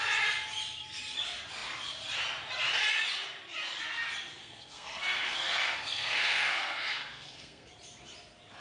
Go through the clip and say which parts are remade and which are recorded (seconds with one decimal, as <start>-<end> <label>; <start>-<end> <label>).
0.0-4.4 recorded; 4.4-7.7 remade; 7.7-8.6 recorded